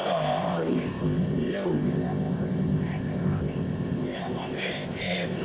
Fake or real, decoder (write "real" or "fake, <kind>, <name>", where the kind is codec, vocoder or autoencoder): fake, codec, ZipCodec